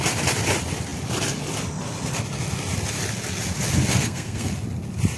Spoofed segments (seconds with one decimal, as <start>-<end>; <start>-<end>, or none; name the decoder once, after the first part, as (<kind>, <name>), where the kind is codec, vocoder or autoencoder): 3.9-4.5 (codec, SNAC)